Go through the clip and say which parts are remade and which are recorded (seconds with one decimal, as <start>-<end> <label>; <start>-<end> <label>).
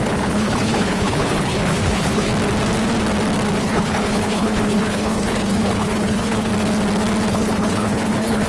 0.0-2.3 remade; 2.3-3.6 recorded; 3.6-6.5 remade; 6.5-7.3 recorded; 7.3-8.5 remade